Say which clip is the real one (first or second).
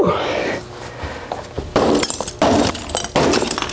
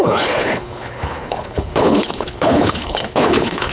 first